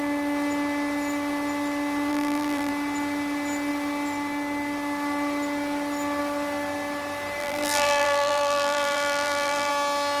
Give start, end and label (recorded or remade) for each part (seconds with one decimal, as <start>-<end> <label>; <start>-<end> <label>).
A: 0.0-2.1 recorded; 2.1-2.7 remade; 2.7-7.4 recorded; 7.4-9.7 remade; 9.7-10.2 recorded